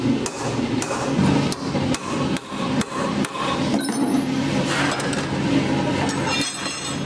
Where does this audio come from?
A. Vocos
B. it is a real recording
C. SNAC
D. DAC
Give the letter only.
B